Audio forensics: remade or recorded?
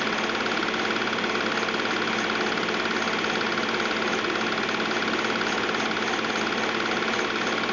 recorded